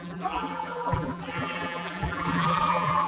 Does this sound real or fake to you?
fake